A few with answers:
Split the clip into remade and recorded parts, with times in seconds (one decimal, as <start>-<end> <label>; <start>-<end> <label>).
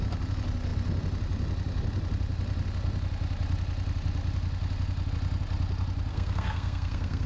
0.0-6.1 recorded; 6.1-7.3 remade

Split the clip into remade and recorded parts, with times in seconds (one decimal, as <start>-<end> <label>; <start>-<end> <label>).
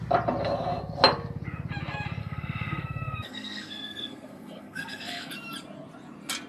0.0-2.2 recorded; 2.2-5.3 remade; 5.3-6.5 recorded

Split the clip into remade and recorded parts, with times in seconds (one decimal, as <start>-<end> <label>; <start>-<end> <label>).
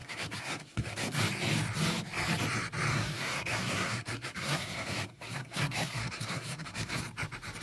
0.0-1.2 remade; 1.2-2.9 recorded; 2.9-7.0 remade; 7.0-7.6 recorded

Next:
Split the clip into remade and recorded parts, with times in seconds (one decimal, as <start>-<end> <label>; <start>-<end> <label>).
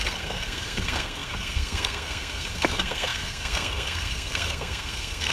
0.0-5.3 remade